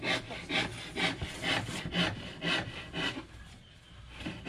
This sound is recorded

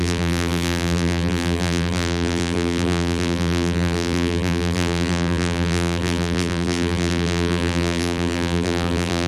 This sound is remade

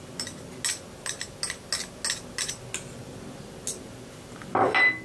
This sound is recorded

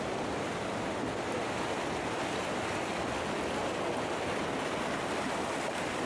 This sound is recorded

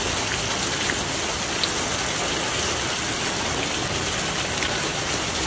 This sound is recorded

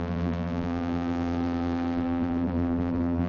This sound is remade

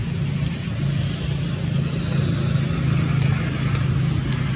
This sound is recorded